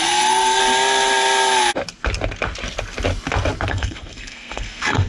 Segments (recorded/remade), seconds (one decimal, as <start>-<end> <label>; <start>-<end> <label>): 0.0-0.6 remade; 0.6-3.7 recorded; 3.7-5.1 remade